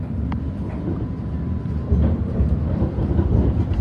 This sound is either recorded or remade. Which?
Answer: recorded